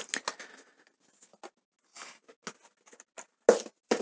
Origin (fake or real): real